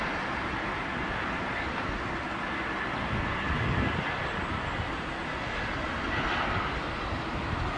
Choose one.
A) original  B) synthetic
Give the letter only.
A